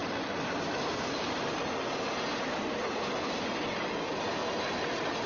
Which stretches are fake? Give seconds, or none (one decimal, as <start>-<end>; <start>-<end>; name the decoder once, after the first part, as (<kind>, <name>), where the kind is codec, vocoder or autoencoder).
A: none